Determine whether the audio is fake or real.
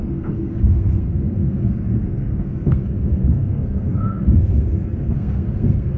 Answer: fake